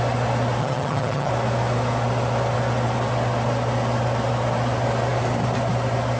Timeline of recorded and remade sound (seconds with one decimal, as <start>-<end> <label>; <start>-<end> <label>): 0.0-0.6 recorded; 0.6-1.3 remade; 1.3-6.2 recorded

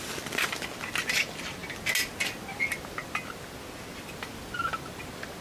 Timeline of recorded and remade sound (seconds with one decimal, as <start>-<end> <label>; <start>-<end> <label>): 0.0-5.4 recorded

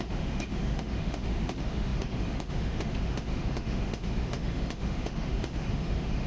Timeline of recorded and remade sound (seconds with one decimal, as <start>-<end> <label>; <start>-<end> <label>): 0.0-6.3 remade

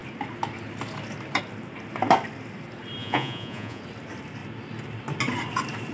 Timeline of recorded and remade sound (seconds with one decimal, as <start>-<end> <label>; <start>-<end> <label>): 0.0-3.0 recorded; 3.0-3.8 remade; 3.8-5.9 recorded

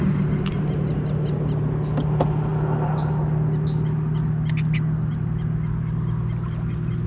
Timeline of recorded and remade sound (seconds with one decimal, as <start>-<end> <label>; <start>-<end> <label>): 0.0-7.1 recorded

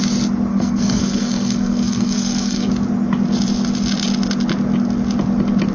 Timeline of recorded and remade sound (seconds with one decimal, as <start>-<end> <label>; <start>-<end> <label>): 0.0-0.5 recorded; 0.5-2.7 remade; 2.7-5.7 recorded

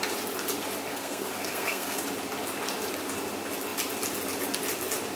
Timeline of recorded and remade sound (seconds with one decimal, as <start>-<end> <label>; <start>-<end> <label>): 0.0-0.9 recorded; 0.9-2.0 remade; 2.0-5.2 recorded